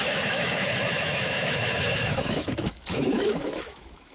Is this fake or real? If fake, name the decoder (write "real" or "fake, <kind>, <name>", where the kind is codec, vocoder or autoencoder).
fake, autoencoder, DAC-VAE